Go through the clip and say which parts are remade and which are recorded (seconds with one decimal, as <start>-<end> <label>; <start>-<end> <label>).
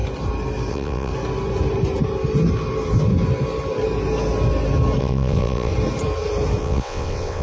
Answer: 0.0-0.7 recorded; 0.7-1.1 remade; 1.1-5.0 recorded; 5.0-5.7 remade; 5.7-6.6 recorded; 6.6-7.4 remade